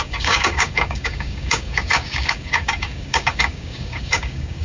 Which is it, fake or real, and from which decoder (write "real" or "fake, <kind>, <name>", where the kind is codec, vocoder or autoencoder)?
fake, codec, DAC